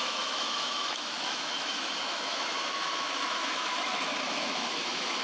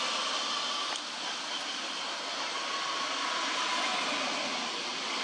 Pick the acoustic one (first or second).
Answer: second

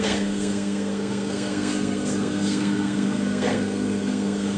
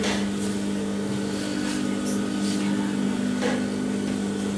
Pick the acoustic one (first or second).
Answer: second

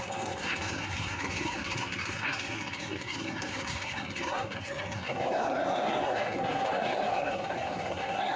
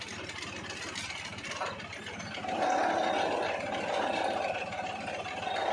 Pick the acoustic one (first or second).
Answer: second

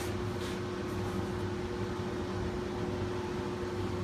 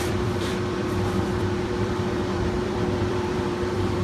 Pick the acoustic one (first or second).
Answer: first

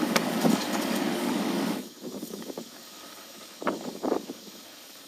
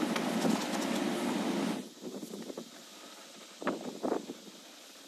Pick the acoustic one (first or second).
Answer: second